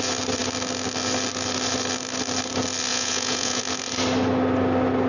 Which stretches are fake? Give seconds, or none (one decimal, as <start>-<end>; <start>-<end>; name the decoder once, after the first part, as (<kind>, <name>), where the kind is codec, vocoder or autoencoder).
2.9-3.6 (vocoder, Vocos)